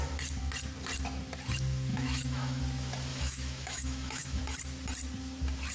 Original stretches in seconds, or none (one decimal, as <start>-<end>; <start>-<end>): 0.0-1.9; 2.6-3.1; 4.4-5.7